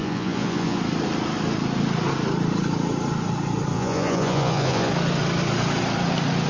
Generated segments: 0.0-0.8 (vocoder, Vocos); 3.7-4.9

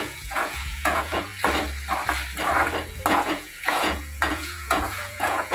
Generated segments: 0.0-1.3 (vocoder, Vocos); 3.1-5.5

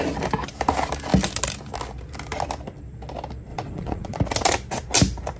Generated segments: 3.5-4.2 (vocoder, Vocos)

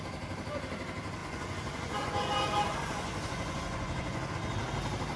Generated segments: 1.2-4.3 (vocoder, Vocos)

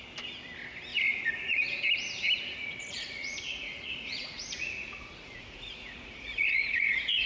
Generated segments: 0.9-1.8 (vocoder, Vocos); 2.5-7.3